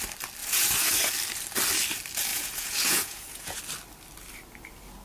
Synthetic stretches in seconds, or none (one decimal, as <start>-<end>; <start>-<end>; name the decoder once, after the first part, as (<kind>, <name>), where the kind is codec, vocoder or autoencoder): 0.4-1.1 (vocoder, Vocos); 2.3-3.6